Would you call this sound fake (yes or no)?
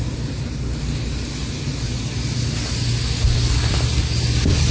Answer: no